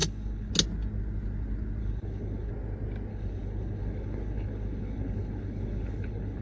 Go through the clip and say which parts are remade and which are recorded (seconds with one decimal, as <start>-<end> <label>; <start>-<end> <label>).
0.0-0.5 remade; 0.5-1.8 recorded; 1.8-2.5 remade; 2.5-3.1 recorded; 3.1-6.4 remade